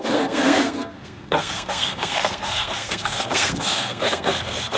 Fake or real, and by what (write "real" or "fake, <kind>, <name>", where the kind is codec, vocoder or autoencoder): fake, codec, SNAC